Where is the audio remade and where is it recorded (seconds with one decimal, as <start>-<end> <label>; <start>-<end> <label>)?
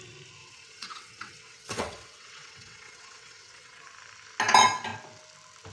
0.0-0.4 recorded; 0.4-3.8 remade; 3.8-5.7 recorded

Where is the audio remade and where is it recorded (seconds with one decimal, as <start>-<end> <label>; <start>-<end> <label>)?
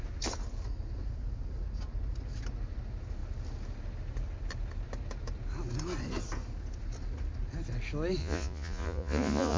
0.0-8.2 recorded; 8.2-9.6 remade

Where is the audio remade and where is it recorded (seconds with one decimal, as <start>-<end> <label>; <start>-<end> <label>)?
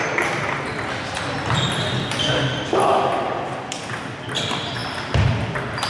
0.0-5.9 recorded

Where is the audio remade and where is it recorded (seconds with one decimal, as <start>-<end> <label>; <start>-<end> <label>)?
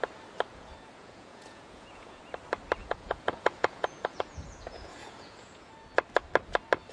0.0-0.5 recorded; 0.5-2.2 remade; 2.2-2.8 recorded; 2.8-5.7 remade; 5.7-6.9 recorded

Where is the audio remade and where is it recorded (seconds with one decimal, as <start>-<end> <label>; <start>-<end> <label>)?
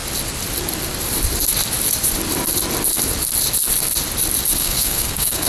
0.0-4.6 recorded; 4.6-5.5 remade